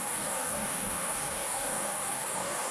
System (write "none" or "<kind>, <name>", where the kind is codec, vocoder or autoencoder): codec, DAC